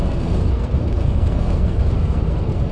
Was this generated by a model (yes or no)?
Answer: yes